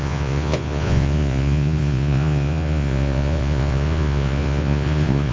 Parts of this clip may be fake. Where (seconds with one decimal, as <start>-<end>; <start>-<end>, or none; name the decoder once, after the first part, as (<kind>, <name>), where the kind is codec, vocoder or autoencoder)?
0.0-5.3 (vocoder, Vocos)